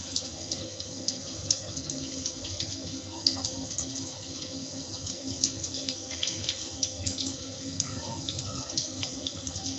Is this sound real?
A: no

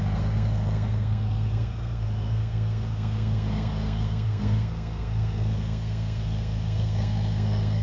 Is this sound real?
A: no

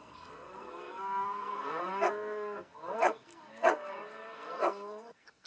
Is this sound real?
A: no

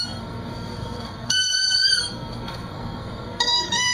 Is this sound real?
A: no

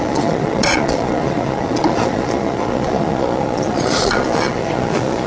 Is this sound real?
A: no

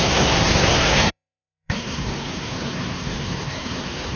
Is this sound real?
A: no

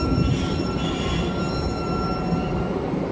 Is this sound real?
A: yes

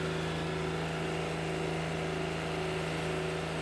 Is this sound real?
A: yes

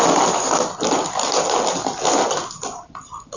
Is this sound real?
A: yes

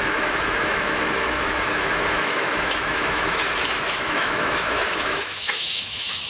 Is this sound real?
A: no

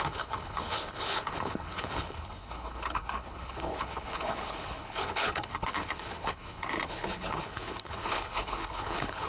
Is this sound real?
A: no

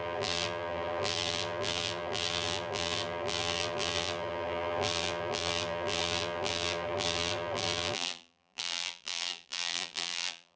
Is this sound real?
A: no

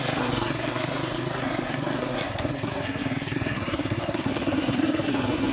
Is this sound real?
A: no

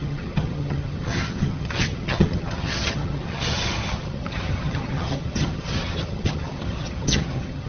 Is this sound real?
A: no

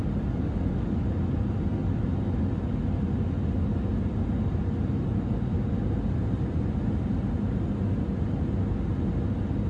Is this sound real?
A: yes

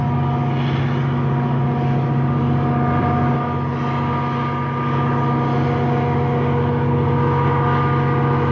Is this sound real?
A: yes